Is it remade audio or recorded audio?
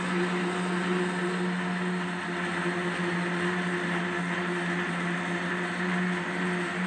recorded